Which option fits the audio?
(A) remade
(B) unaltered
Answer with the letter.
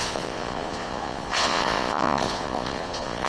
A